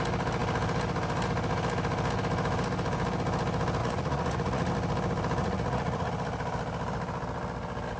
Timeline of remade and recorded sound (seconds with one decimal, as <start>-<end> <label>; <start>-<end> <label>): 0.0-3.8 recorded; 3.8-4.7 remade; 4.7-5.4 recorded; 5.4-6.1 remade; 6.1-8.0 recorded